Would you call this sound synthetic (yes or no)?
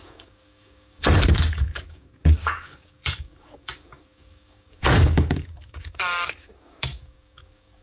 yes